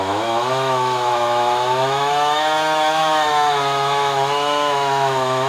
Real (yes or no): no